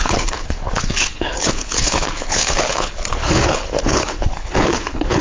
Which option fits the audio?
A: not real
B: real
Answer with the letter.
A